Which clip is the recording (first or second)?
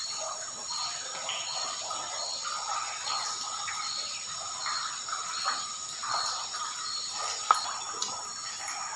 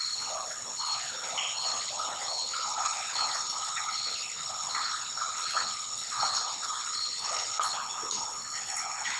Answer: first